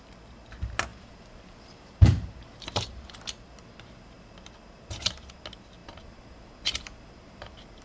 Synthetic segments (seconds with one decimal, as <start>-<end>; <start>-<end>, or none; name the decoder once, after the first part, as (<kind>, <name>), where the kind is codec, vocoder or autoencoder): 0.9-3.1 (vocoder, BigVGAN v2); 5.8-7.8